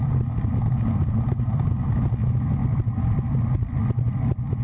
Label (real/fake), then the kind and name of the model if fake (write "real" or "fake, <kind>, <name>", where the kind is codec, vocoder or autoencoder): real